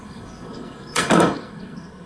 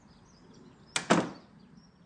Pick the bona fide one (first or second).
second